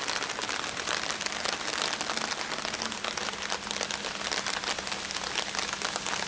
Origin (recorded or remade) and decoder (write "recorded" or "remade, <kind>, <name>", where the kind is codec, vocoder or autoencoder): recorded